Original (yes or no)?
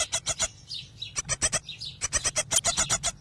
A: yes